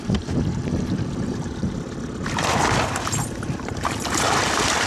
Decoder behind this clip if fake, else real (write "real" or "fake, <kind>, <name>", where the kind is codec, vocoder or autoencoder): real